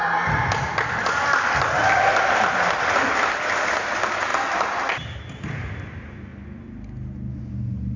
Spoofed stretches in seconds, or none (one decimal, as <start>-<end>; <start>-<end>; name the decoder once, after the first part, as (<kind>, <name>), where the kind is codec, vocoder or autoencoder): none